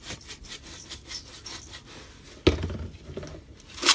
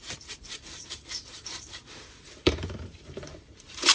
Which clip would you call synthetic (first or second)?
second